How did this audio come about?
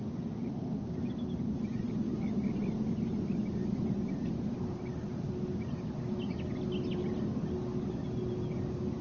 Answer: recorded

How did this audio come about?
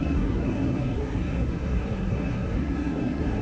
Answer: remade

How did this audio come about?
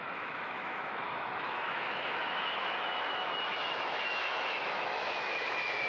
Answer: remade